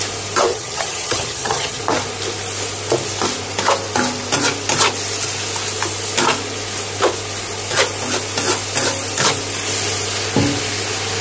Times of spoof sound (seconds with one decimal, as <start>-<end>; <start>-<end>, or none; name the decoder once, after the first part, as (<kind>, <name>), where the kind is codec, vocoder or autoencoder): 0.5-1.8 (vocoder, HiFi-GAN)

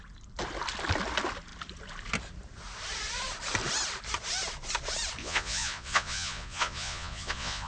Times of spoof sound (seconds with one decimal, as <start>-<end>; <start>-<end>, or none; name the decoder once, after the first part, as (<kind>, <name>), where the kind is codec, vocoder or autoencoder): 5.2-7.7 (vocoder, Vocos)

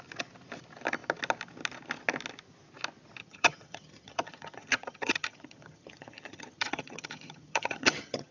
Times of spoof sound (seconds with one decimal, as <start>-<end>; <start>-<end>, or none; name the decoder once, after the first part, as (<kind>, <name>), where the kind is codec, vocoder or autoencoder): 3.2-8.3 (vocoder, HiFi-GAN)

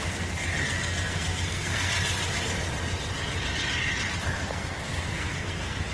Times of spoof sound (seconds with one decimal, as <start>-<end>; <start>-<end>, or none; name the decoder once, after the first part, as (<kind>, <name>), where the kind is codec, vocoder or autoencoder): 0.0-1.9 (codec, SNAC); 4.2-5.9

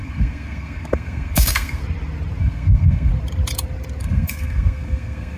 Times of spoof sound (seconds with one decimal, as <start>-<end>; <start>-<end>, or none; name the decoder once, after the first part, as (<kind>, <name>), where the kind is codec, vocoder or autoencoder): 0.0-1.8 (codec, SNAC); 2.4-3.1; 4.0-5.4

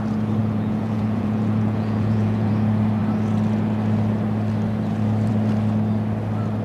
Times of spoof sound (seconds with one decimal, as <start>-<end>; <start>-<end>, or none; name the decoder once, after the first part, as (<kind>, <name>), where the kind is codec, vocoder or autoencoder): 0.4-2.5 (vocoder, Vocos)

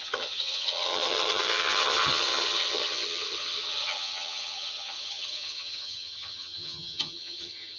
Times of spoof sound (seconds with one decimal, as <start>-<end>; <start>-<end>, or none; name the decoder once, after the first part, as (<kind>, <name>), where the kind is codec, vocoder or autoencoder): 0.0-7.8 (vocoder, HiFi-GAN)